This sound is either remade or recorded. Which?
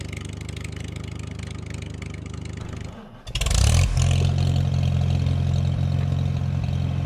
recorded